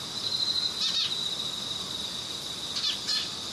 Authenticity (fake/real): real